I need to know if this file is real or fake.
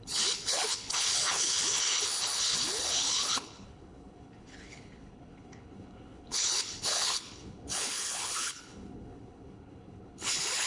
fake